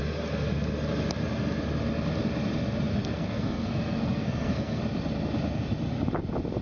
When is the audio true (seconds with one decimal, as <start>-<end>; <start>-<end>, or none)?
0.0-2.9; 4.8-6.6